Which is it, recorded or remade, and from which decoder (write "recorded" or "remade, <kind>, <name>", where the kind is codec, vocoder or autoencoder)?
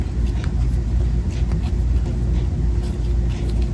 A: recorded